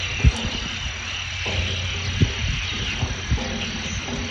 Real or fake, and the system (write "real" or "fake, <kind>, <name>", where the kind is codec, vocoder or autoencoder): real